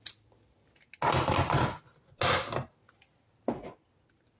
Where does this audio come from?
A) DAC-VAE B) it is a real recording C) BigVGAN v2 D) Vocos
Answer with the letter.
B